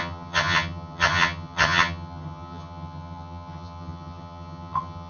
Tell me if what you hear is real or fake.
fake